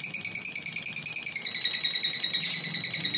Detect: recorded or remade recorded